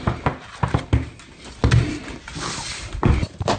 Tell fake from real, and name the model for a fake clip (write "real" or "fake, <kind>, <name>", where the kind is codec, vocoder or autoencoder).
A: real